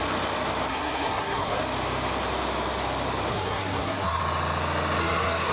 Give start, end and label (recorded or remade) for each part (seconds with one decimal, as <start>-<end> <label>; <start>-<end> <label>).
0.0-0.7 recorded; 0.7-1.6 remade; 1.6-3.3 recorded; 3.3-4.2 remade; 4.2-5.0 recorded; 5.0-5.5 remade